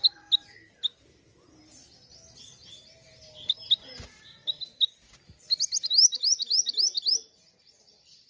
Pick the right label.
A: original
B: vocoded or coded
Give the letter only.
A